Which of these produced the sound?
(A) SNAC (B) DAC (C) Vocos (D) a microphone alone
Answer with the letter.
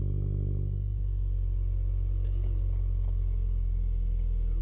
D